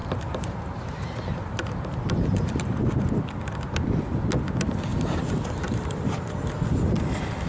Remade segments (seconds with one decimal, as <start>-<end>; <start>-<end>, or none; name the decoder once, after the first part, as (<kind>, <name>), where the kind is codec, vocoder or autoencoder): 0.0-2.8 (vocoder, BigVGAN v2); 4.9-6.2